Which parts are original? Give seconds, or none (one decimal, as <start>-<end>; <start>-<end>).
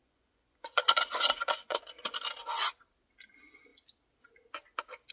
2.0-5.1